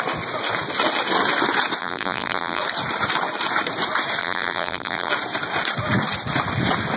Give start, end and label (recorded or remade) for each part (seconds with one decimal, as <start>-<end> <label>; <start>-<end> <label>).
0.0-1.8 recorded; 1.8-2.6 remade; 2.6-4.2 recorded; 4.2-5.1 remade; 5.1-7.0 recorded